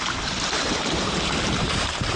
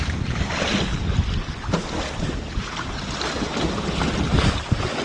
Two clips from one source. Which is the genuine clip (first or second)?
second